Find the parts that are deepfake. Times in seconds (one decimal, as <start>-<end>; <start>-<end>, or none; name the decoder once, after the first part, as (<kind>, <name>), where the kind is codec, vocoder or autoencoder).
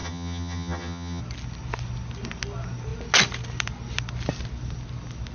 0.0-1.2 (vocoder, HiFi-GAN)